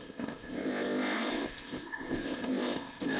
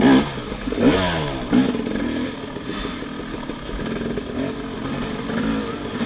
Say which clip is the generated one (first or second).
first